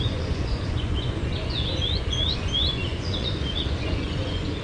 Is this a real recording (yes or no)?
no